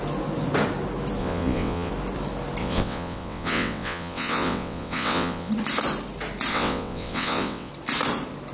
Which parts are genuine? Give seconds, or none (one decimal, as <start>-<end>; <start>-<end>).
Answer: 0.0-1.2; 1.9-2.6; 5.5-6.5; 7.7-8.5